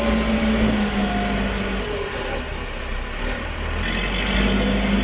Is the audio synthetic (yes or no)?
no